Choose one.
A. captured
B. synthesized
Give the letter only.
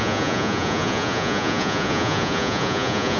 B